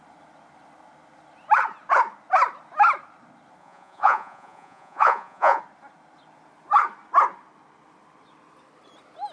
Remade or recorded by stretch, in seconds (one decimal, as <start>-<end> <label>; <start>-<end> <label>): 0.0-3.6 recorded; 3.6-5.6 remade; 5.6-9.3 recorded